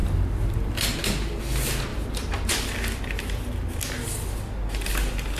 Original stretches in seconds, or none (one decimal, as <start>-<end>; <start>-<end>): 0.7-1.9; 3.0-5.4